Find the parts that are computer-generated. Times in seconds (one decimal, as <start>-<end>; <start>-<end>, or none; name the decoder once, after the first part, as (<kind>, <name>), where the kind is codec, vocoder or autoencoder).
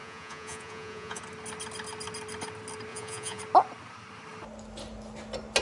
0.0-1.2 (vocoder, Vocos); 2.9-3.4